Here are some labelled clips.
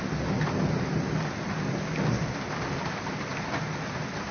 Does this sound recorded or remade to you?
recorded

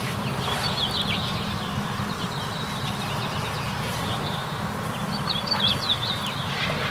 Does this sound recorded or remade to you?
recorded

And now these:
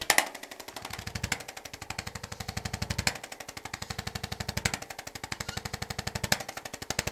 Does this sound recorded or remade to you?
recorded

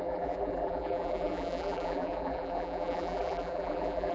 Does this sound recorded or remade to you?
remade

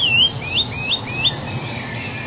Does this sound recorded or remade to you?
recorded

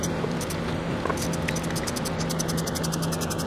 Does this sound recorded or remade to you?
recorded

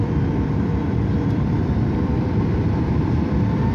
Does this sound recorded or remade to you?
remade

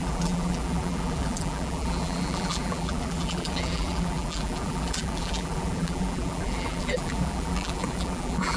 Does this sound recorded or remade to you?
remade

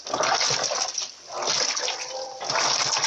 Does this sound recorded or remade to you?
recorded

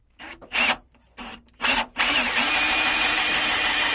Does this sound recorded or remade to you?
remade